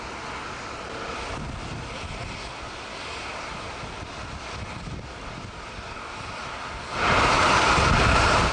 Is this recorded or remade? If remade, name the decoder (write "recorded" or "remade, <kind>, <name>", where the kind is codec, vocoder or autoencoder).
recorded